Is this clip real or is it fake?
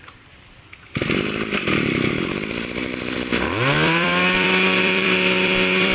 fake